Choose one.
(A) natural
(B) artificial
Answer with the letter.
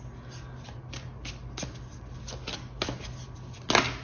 A